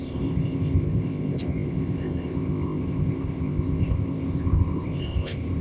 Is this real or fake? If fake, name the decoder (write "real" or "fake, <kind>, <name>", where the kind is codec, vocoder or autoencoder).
fake, codec, ZipCodec